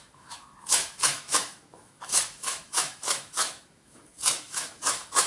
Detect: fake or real fake